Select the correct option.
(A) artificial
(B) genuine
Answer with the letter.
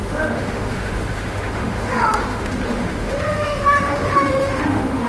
A